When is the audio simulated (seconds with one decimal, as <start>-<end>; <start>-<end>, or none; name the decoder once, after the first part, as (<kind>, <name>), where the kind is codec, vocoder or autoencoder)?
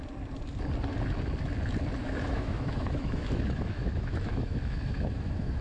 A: 2.0-5.6 (autoencoder, DAC-VAE)